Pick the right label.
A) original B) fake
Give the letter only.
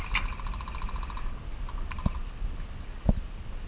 A